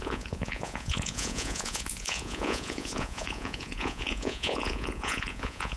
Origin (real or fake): fake